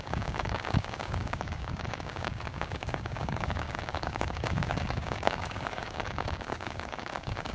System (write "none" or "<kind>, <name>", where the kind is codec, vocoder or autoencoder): codec, DAC